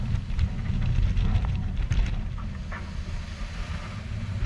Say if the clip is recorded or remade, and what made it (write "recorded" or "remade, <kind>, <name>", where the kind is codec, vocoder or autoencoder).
recorded